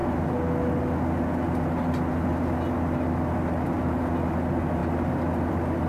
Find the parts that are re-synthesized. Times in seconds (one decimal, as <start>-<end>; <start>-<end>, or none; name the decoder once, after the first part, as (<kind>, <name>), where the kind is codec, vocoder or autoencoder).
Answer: none